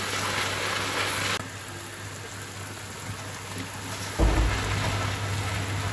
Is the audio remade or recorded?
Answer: recorded